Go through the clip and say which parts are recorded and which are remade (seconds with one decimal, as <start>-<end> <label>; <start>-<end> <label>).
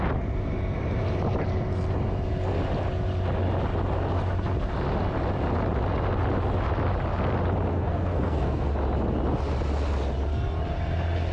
0.0-7.7 recorded; 7.7-8.7 remade; 8.7-11.3 recorded